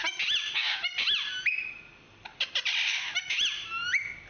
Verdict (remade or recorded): recorded